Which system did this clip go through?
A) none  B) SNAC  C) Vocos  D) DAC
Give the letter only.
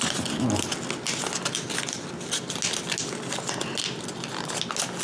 A